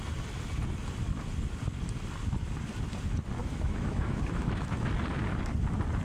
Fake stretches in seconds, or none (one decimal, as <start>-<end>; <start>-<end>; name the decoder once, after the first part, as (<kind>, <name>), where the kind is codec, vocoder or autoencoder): 3.4-4.9 (autoencoder, DAC-VAE)